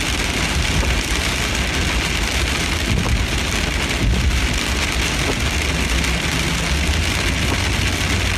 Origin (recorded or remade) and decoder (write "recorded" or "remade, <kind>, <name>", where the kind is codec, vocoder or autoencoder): recorded